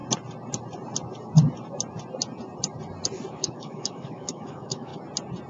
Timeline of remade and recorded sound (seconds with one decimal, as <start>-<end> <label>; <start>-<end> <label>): 0.0-3.3 recorded; 3.3-4.9 remade; 4.9-5.5 recorded

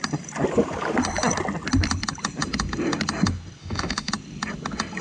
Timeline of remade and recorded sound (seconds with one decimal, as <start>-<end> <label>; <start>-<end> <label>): 0.0-3.6 recorded; 3.6-4.1 remade; 4.1-5.0 recorded

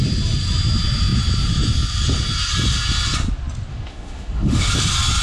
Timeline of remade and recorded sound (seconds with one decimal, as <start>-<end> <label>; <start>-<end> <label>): 0.0-3.7 recorded; 3.7-4.7 remade; 4.7-5.2 recorded

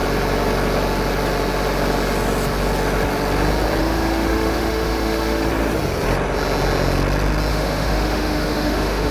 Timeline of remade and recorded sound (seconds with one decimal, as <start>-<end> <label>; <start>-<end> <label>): 0.0-3.8 recorded; 3.8-5.5 remade; 5.5-7.5 recorded; 7.5-9.1 remade

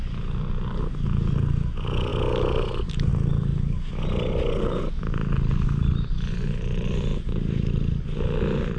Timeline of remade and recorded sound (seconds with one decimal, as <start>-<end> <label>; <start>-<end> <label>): 0.0-8.8 recorded

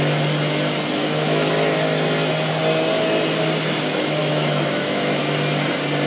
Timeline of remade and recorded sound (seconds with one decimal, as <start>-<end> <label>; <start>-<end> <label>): 0.0-1.0 recorded; 1.0-1.5 remade; 1.5-4.2 recorded; 4.2-5.2 remade; 5.2-6.1 recorded

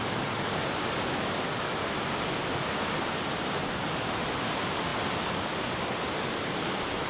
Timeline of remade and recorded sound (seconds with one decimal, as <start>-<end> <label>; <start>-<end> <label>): 0.0-7.1 recorded

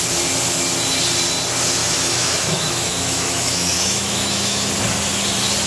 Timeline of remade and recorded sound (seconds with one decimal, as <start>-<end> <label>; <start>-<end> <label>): 0.0-1.8 recorded; 1.8-4.7 remade; 4.7-5.7 recorded